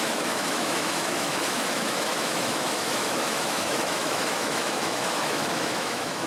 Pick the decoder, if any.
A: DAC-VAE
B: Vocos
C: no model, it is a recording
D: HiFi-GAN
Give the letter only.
A